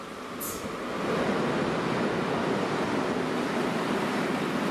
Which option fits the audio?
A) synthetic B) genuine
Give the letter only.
B